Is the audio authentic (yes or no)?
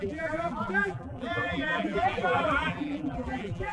no